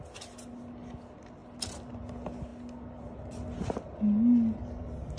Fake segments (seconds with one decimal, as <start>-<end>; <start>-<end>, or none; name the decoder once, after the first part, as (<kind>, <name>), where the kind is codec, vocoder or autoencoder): none